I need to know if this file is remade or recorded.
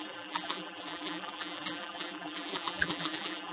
remade